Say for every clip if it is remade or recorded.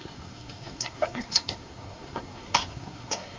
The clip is remade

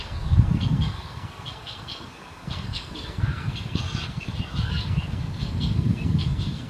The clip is remade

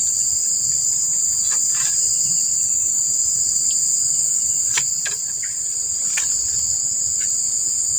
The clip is recorded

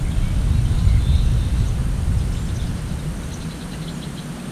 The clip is recorded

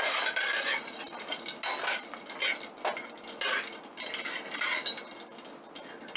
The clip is recorded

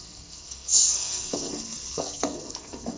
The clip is remade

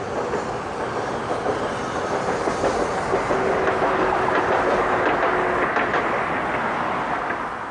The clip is recorded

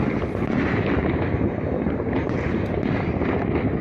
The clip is recorded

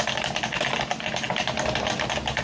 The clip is recorded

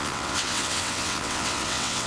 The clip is remade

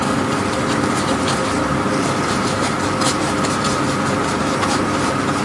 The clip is recorded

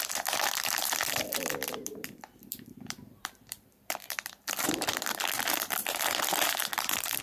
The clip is remade